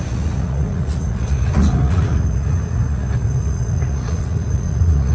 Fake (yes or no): yes